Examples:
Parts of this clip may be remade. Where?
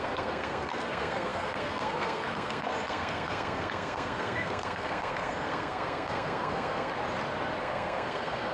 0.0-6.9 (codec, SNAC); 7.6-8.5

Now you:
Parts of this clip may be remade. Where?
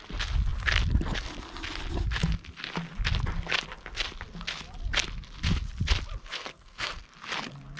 6.2-7.1 (codec, SNAC)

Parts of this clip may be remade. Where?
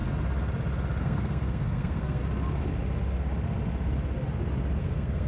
1.0-2.2 (codec, SNAC); 4.8-5.3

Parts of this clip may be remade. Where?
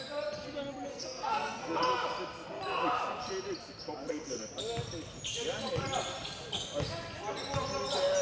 0.9-1.8 (codec, SNAC); 4.0-4.5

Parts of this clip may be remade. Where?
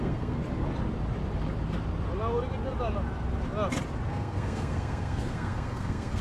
0.0-0.4 (codec, SNAC); 4.1-6.2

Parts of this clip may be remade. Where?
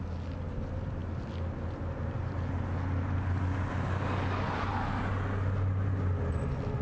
none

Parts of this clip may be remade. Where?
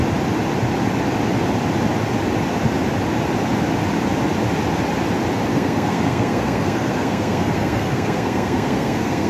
5.5-9.3 (codec, SNAC)